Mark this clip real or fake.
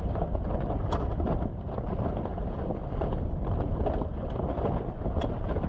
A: real